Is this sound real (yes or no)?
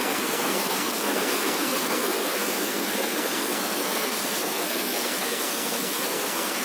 no